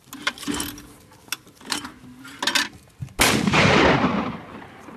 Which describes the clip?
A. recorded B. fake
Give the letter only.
A